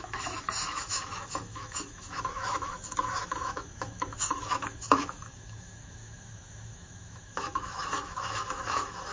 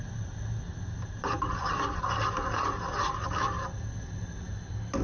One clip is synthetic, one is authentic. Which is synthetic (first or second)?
first